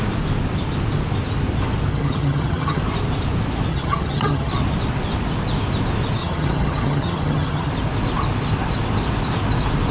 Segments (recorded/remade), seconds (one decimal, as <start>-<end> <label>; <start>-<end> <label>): 0.0-1.9 recorded; 1.9-2.8 remade; 2.8-3.7 recorded; 3.7-4.5 remade; 4.5-6.2 recorded; 6.2-7.7 remade; 7.7-9.9 recorded

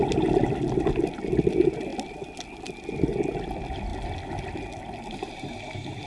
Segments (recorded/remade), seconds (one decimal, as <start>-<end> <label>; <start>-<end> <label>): 0.0-6.1 recorded

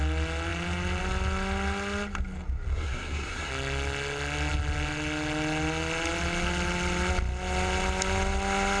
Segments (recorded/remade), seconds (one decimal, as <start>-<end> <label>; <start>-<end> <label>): 0.0-2.7 recorded; 2.7-3.5 remade; 3.5-8.8 recorded

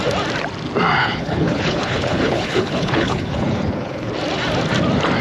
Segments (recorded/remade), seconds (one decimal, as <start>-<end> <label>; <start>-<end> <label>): 0.0-1.0 recorded; 1.0-4.1 remade; 4.1-5.2 recorded

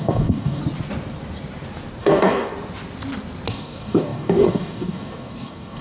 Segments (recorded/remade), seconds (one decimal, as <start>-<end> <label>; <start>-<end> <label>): 0.0-0.6 remade; 0.6-2.0 recorded; 2.0-2.5 remade; 2.5-3.5 recorded; 3.5-5.8 remade

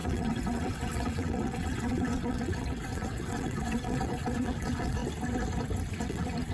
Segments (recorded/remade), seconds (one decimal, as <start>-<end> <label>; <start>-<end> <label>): 0.0-5.0 remade; 5.0-5.9 recorded; 5.9-6.5 remade